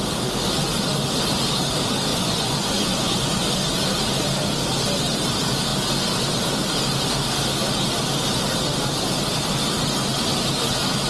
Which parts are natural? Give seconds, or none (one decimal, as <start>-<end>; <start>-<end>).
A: 0.0-2.1; 3.3-11.1